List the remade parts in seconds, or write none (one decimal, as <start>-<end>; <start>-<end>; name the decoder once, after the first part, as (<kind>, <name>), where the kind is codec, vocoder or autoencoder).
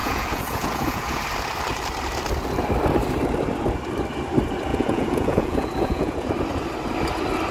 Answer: 0.0-1.2 (vocoder, Vocos); 4.7-6.3